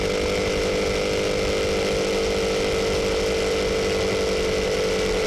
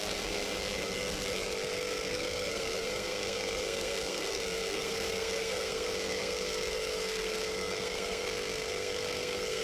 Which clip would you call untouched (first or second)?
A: first